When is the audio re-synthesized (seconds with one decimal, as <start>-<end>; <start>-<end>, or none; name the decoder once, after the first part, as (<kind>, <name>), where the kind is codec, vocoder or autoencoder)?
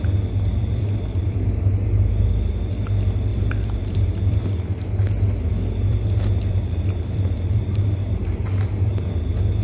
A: 0.5-1.7 (vocoder, BigVGAN v2); 3.3-4.4; 5.9-8.9